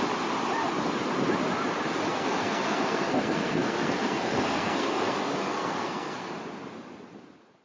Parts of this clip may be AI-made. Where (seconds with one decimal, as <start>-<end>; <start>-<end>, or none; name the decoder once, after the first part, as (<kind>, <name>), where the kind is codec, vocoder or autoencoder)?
2.1-6.3 (codec, SNAC)